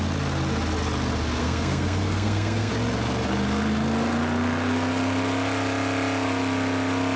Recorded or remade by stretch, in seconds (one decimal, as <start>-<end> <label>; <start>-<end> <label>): 0.0-1.4 recorded; 1.4-2.7 remade; 2.7-7.2 recorded